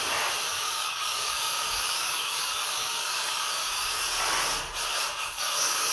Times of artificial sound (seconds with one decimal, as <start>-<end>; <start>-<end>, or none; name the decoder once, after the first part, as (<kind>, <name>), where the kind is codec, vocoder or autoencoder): 0.5-4.0 (codec, DAC); 4.9-5.9